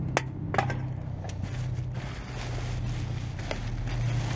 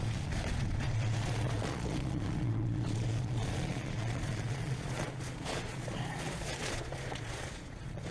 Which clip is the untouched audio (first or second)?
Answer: first